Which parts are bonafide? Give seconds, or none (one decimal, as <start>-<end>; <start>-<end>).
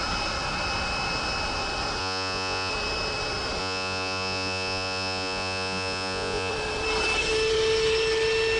0.0-2.0; 2.7-3.6; 6.5-8.6